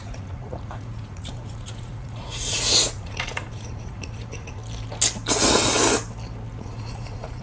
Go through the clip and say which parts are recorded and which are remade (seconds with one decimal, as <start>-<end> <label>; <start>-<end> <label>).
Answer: 0.0-4.6 remade; 4.6-6.6 recorded; 6.6-7.4 remade

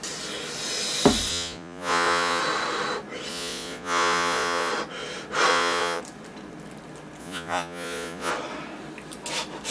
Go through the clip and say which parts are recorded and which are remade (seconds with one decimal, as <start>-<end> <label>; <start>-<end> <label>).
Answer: 0.0-1.3 recorded; 1.3-2.4 remade; 2.4-3.3 recorded; 3.3-4.7 remade; 4.7-5.5 recorded; 5.5-6.0 remade; 6.0-7.2 recorded; 7.2-8.3 remade; 8.3-9.7 recorded

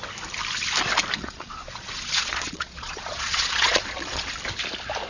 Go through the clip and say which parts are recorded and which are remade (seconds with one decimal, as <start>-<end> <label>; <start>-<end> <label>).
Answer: 0.0-1.2 recorded; 1.2-4.3 remade; 4.3-5.1 recorded

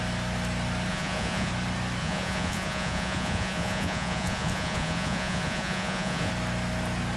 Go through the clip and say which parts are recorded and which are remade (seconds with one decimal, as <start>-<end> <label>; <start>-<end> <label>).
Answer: 0.0-0.9 recorded; 0.9-1.5 remade; 1.5-2.0 recorded; 2.0-6.3 remade; 6.3-7.2 recorded

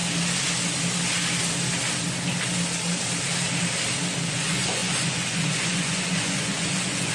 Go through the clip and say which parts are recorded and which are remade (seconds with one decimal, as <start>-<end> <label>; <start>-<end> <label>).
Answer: 0.0-4.3 recorded; 4.3-7.1 remade

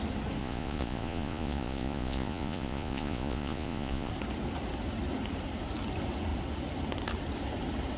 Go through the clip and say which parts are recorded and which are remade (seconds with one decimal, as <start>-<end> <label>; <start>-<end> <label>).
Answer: 0.0-0.4 recorded; 0.4-4.1 remade; 4.1-8.0 recorded

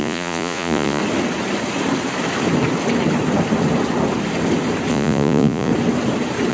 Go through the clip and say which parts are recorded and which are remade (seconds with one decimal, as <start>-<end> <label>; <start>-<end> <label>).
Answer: 0.0-1.0 remade; 1.0-4.9 recorded; 4.9-5.7 remade; 5.7-6.5 recorded